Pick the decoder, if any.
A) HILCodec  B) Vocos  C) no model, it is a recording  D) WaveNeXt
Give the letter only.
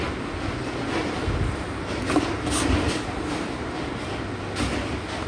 C